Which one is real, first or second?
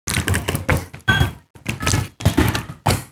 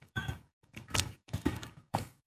first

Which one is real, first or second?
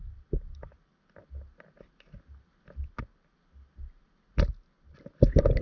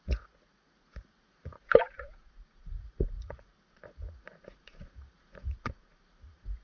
first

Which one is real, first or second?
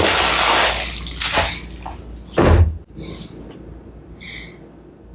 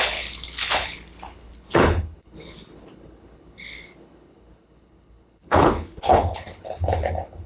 first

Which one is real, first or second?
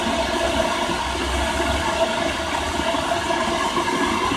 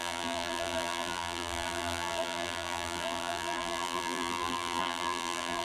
first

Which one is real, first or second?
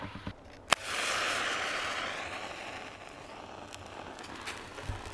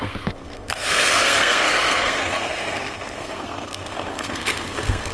first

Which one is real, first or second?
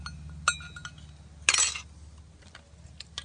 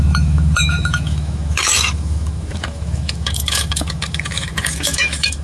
first